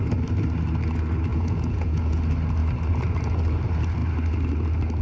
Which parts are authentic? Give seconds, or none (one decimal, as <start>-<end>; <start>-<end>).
0.0-1.3; 2.2-5.0